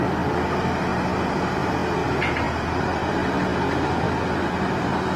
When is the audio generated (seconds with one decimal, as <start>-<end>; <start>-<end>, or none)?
none